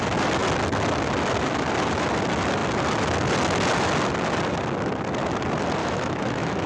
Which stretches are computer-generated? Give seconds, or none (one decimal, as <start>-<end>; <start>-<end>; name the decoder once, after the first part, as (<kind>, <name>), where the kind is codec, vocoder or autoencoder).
5.8-6.7 (autoencoder, DAC-VAE)